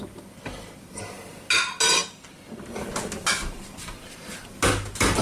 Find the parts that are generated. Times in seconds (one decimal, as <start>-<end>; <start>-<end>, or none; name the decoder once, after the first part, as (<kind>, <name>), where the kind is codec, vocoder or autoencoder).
none